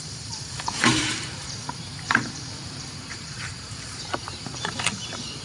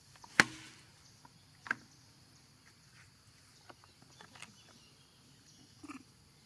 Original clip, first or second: second